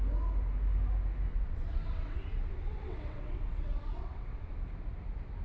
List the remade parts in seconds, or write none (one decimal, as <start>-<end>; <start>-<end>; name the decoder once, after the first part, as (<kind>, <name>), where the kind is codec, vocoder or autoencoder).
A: 1.3-4.5 (vocoder, WaveNeXt)